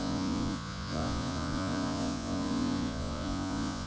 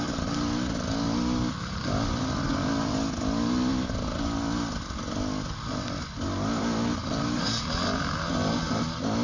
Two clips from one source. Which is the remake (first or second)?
first